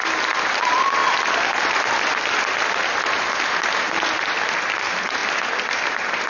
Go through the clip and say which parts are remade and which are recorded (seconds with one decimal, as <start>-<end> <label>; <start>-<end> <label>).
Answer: 0.0-0.5 recorded; 0.5-1.0 remade; 1.0-4.2 recorded; 4.2-5.2 remade; 5.2-5.7 recorded; 5.7-6.3 remade